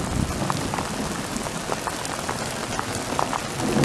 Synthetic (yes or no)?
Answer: no